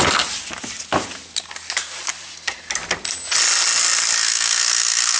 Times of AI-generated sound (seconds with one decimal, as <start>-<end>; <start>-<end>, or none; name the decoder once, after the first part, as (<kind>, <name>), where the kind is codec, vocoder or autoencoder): 4.2-5.2 (codec, SNAC)